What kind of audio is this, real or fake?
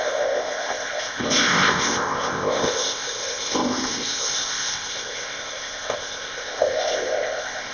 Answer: fake